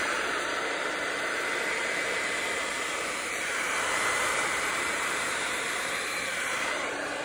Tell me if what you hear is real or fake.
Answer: fake